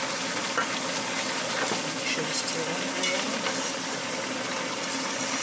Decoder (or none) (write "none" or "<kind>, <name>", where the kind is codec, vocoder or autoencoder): none